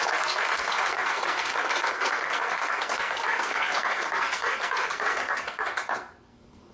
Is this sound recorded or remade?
remade